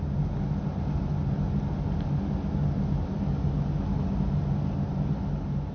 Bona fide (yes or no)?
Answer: yes